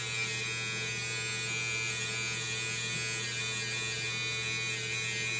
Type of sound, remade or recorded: recorded